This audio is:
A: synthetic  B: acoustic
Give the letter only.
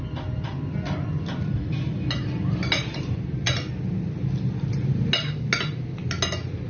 B